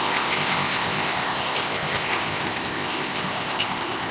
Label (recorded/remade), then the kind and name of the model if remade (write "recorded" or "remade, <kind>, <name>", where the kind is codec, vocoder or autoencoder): remade, codec, ZipCodec